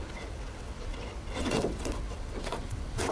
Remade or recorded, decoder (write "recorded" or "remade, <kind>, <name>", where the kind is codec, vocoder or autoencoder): remade, vocoder, WaveNeXt